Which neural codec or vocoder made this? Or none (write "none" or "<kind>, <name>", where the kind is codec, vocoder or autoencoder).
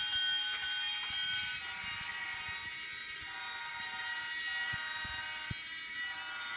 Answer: none